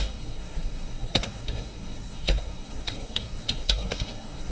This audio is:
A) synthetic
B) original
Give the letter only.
A